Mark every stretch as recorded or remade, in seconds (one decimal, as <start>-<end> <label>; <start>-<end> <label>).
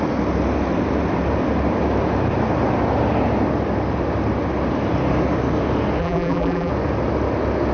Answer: 0.0-6.0 recorded; 6.0-6.7 remade; 6.7-7.7 recorded